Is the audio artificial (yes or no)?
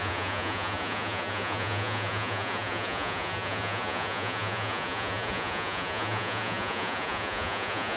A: yes